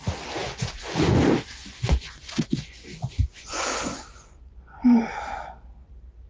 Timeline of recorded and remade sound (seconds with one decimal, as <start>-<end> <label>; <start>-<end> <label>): 0.0-0.4 recorded; 0.4-1.2 remade; 1.2-1.6 recorded; 1.6-5.2 remade; 5.2-6.3 recorded

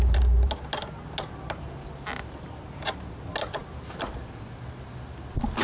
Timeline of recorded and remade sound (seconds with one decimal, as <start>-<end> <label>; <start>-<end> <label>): 0.0-5.6 recorded

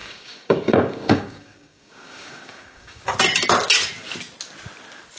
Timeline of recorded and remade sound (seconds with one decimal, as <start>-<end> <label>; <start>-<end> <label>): 0.0-3.0 remade; 3.0-5.2 recorded

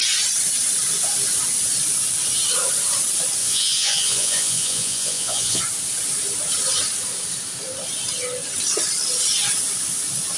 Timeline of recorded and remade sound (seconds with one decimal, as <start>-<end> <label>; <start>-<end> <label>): 0.0-3.4 recorded; 3.4-5.6 remade; 5.6-10.4 recorded

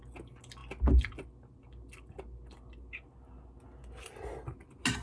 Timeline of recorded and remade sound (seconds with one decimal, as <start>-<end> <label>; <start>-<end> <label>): 0.0-5.0 recorded

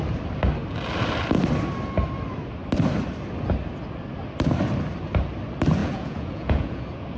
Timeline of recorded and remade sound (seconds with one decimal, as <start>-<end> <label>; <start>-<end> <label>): 0.0-5.8 recorded; 5.8-6.8 remade; 6.8-7.2 recorded